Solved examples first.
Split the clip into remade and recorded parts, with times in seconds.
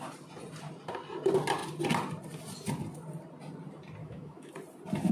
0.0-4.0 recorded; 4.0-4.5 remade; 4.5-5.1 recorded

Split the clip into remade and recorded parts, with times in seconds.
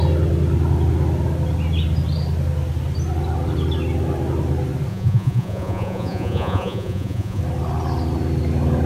0.0-4.9 recorded; 4.9-7.4 remade; 7.4-8.9 recorded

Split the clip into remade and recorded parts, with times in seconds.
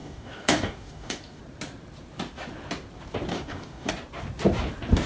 0.0-1.4 remade; 1.4-3.3 recorded; 3.3-3.9 remade; 3.9-5.1 recorded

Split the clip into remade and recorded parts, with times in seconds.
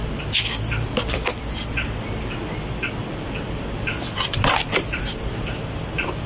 0.0-6.3 recorded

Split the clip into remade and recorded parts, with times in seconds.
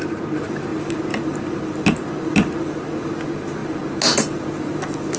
0.0-5.2 recorded